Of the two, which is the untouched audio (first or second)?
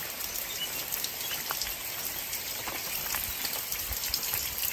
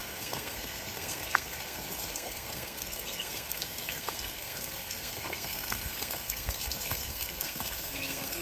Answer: first